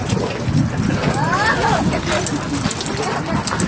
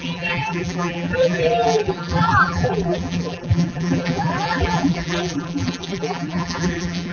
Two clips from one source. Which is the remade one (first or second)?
second